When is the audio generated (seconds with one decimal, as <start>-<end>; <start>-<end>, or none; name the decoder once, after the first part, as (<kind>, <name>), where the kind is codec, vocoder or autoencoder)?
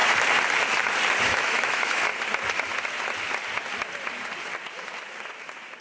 1.2-2.1 (autoencoder, DAC-VAE)